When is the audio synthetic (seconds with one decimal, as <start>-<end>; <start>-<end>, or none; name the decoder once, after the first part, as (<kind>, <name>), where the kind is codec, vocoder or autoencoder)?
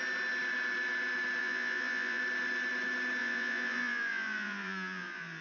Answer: 1.4-2.2 (vocoder, Vocos); 3.2-5.4